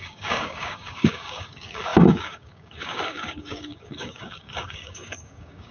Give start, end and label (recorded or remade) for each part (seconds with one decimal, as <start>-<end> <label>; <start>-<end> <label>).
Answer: 0.0-5.7 remade